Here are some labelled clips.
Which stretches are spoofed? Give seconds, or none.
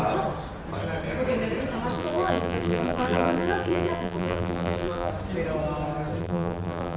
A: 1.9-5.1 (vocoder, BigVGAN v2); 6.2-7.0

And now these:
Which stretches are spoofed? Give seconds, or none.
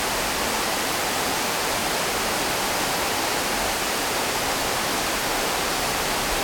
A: 0.0-1.8 (vocoder, BigVGAN v2); 5.4-6.4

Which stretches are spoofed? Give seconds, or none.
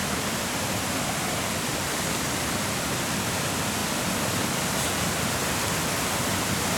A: 0.0-0.8 (vocoder, BigVGAN v2)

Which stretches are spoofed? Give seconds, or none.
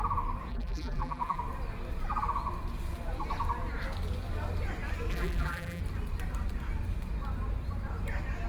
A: 0.5-1.4 (vocoder, BigVGAN v2); 5.1-5.8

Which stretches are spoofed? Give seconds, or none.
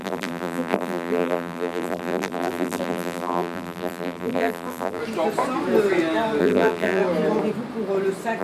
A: 0.0-5.0 (vocoder, BigVGAN v2); 6.4-7.0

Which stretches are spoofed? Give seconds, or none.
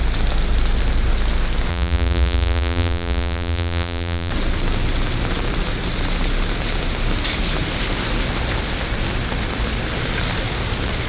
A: 1.7-4.3 (vocoder, BigVGAN v2)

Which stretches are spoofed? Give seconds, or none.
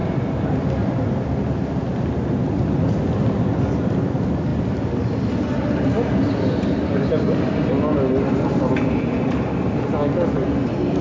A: 0.0-1.8 (vocoder, BigVGAN v2); 4.5-9.4